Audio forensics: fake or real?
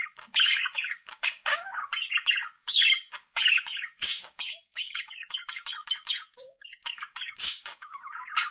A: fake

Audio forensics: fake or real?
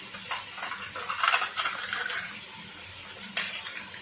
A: real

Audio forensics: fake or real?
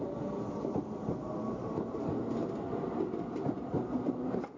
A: real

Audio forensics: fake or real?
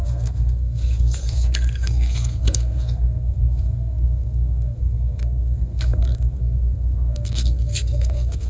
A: fake